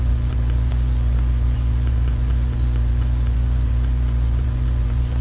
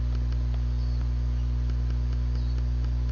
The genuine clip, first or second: second